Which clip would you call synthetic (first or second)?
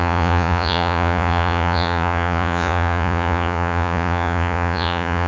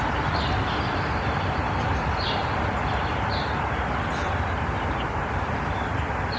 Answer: first